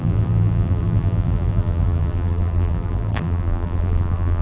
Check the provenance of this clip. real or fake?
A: fake